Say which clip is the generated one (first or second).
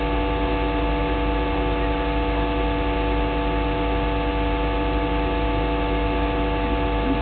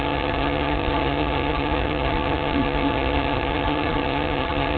second